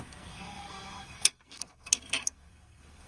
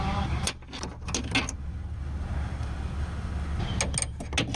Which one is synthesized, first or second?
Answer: first